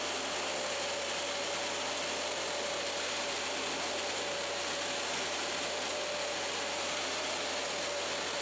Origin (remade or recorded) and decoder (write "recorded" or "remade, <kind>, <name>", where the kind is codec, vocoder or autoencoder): recorded